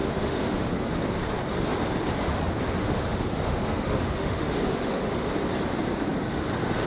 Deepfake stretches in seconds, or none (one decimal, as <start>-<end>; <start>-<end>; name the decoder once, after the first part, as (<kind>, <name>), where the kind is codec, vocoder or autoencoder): 0.0-0.9 (autoencoder, DAC-VAE); 2.8-5.3